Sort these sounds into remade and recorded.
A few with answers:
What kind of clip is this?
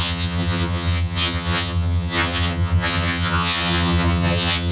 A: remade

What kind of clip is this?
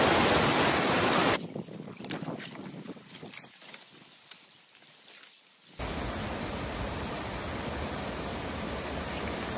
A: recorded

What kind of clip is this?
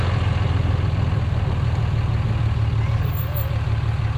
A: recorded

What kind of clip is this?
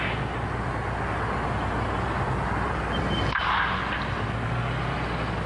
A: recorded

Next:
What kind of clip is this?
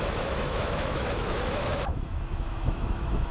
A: remade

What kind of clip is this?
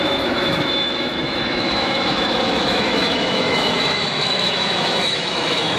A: remade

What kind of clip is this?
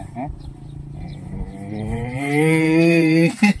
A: remade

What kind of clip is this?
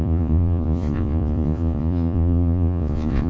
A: remade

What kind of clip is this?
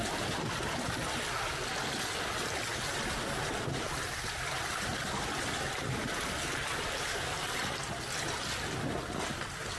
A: recorded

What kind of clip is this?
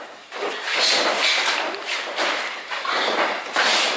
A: recorded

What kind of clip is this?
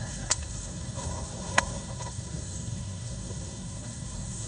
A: remade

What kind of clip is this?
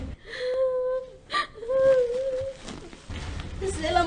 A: recorded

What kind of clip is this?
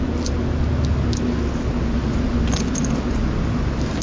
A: recorded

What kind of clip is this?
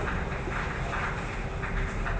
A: recorded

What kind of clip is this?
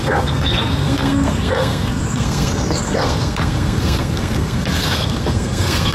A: remade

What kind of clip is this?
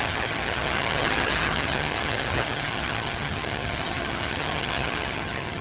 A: remade